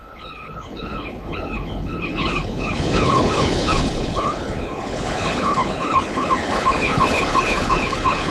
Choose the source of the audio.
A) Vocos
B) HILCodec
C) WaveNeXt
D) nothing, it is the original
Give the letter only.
B